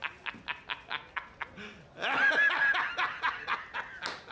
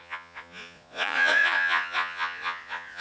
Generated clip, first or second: second